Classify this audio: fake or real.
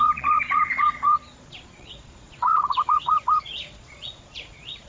fake